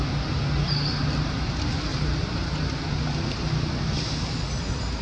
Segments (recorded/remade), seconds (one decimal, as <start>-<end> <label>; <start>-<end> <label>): 0.0-1.9 recorded; 1.9-3.0 remade; 3.0-5.0 recorded